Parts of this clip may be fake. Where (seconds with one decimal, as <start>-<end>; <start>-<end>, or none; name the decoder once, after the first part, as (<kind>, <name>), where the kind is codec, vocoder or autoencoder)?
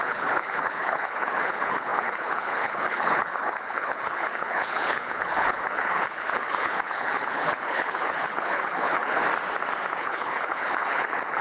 0.0-9.2 (codec, HILCodec); 10.0-11.4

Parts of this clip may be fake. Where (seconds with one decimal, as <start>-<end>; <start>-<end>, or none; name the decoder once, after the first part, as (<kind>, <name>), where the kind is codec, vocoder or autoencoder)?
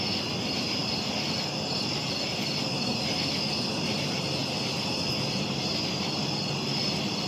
none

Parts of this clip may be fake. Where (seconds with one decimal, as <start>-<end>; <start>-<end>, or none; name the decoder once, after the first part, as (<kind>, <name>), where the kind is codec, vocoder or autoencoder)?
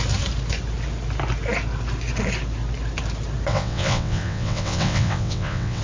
3.5-5.8 (vocoder, WaveNeXt)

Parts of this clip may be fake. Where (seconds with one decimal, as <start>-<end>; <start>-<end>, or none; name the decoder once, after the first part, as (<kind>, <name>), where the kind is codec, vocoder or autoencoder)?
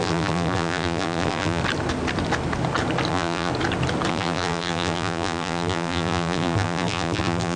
0.0-1.6 (vocoder, BigVGAN v2); 3.1-3.5; 4.1-7.6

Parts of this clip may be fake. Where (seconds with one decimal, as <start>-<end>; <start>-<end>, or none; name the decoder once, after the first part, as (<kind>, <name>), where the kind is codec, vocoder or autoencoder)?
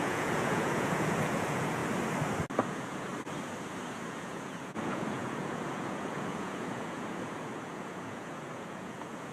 0.0-1.8 (vocoder, Vocos); 2.6-3.1; 3.9-9.3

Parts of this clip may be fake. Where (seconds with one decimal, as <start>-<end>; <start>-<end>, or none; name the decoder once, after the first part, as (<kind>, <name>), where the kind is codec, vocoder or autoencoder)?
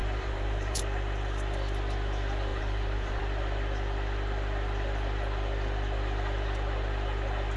0.0-0.8 (vocoder, BigVGAN v2); 2.5-3.2